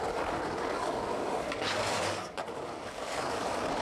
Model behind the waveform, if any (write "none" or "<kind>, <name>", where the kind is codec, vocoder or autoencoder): codec, DAC